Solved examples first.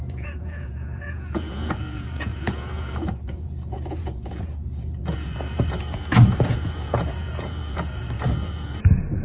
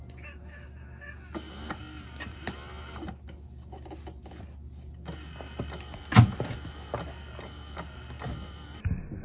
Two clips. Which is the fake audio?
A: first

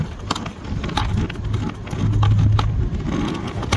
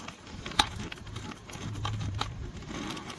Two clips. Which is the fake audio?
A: second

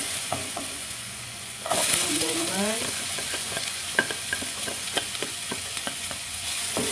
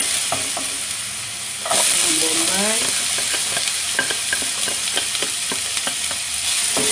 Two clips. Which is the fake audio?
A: first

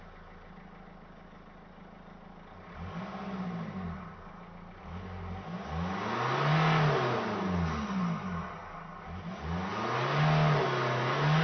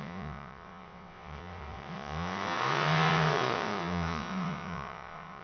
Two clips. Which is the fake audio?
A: second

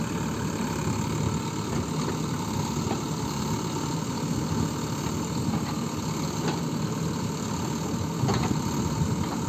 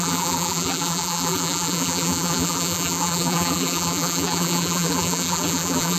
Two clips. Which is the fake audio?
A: second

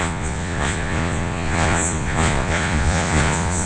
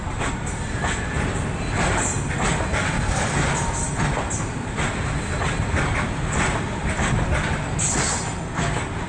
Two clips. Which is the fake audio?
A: first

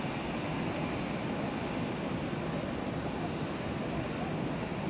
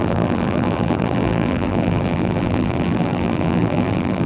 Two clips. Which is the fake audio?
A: second